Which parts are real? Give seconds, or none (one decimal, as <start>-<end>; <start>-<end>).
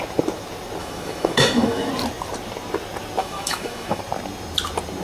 0.0-0.8; 1.9-3.2; 4.0-5.0